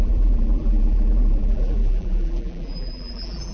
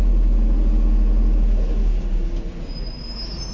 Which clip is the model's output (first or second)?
first